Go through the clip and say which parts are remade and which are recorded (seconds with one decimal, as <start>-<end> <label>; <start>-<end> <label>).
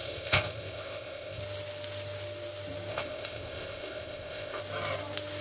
0.0-1.4 remade; 1.4-2.9 recorded; 2.9-4.6 remade; 4.6-5.4 recorded